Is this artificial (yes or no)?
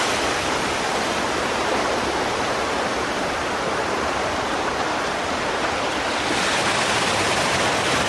yes